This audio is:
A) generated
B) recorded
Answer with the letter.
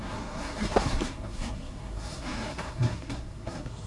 A